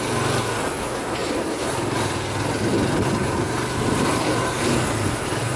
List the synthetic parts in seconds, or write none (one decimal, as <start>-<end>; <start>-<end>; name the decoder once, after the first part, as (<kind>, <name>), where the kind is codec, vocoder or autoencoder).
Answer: none

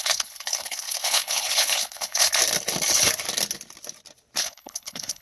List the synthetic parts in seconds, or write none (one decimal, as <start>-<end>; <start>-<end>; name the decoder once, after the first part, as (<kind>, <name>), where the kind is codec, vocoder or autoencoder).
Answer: 0.0-2.4 (codec, HILCodec); 4.4-5.2

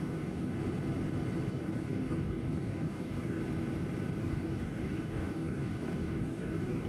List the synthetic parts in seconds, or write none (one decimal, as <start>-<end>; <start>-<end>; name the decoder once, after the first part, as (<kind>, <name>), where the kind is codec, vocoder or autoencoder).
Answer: 0.0-0.6 (codec, DAC); 1.5-3.4; 4.2-6.9

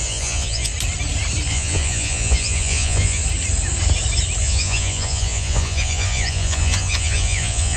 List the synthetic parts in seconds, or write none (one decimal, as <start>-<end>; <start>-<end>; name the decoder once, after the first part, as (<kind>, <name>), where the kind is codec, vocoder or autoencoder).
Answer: 0.0-0.7 (vocoder, Vocos); 1.5-3.2; 4.4-7.8

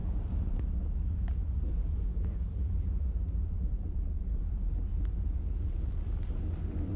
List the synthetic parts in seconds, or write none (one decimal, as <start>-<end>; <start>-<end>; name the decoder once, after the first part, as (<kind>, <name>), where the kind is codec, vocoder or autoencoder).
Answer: 2.1-3.7 (vocoder, BigVGAN v2)

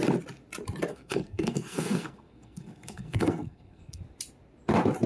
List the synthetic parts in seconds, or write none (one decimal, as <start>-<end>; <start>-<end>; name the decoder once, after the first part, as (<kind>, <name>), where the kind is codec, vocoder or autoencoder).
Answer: 0.9-4.0 (codec, SNAC)

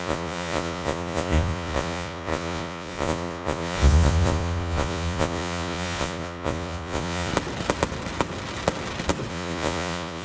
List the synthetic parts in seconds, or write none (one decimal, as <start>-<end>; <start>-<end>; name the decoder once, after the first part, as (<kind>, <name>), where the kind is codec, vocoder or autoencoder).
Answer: 0.0-7.3 (vocoder, Vocos); 9.3-10.2

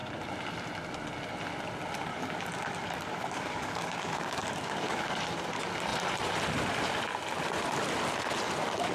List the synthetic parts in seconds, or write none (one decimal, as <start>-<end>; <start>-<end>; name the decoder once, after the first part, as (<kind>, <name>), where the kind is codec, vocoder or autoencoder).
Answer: 2.1-5.2 (codec, DAC)